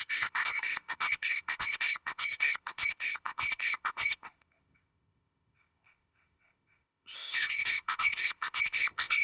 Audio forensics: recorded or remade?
remade